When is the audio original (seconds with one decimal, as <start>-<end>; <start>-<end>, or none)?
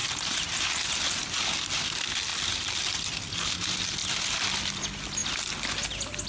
0.9-6.3